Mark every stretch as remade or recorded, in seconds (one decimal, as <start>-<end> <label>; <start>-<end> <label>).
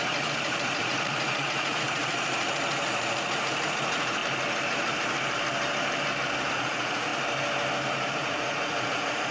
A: 0.0-4.2 remade; 4.2-6.5 recorded; 6.5-7.1 remade; 7.1-7.9 recorded; 7.9-9.3 remade